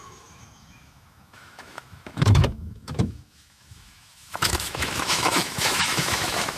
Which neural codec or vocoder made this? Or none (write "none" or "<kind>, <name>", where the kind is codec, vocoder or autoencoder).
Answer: autoencoder, DAC-VAE